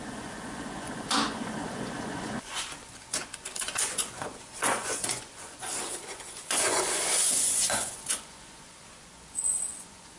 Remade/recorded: remade